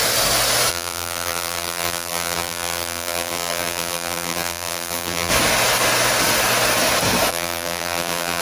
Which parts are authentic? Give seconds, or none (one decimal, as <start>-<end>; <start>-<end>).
0.0-0.7; 5.3-7.3